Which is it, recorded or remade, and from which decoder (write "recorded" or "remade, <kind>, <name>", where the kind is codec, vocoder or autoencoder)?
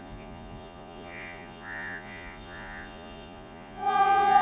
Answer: remade, vocoder, Vocos